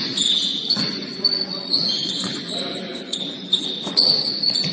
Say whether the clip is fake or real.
fake